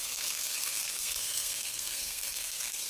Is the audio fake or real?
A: fake